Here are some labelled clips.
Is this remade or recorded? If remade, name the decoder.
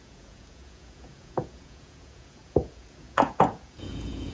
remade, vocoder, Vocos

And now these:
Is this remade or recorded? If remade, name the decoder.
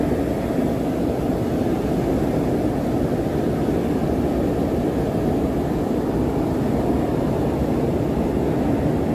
recorded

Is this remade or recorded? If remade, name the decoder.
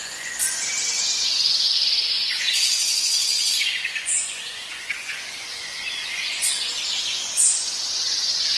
remade, vocoder, Vocos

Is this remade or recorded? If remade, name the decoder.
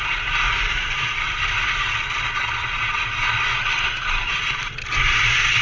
recorded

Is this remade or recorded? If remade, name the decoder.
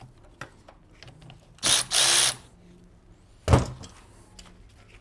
recorded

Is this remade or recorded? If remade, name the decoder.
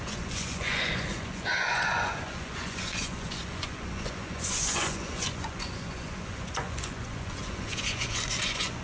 remade, vocoder, Vocos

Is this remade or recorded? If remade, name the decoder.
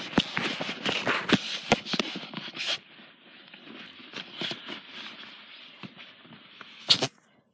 recorded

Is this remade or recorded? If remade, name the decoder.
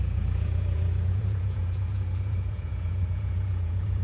remade, vocoder, Vocos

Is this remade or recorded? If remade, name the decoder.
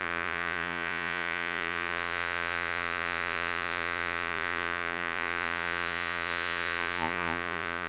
remade, vocoder, Vocos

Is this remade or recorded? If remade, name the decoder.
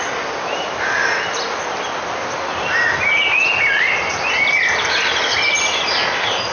recorded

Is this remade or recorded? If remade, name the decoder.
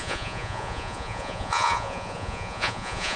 remade, vocoder, Vocos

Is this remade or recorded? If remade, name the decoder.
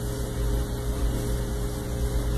recorded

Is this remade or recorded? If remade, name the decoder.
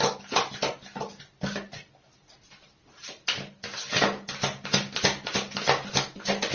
recorded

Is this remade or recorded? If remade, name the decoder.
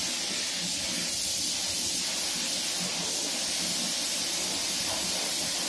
recorded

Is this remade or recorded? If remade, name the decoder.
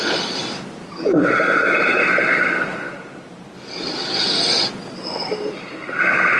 recorded